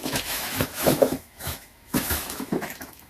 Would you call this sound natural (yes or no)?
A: no